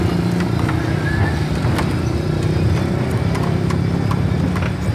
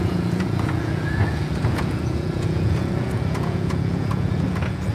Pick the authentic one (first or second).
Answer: first